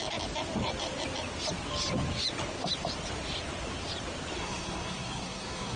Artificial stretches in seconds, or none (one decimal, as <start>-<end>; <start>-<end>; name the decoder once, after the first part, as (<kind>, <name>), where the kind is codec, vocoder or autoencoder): 4.4-5.8 (codec, SNAC)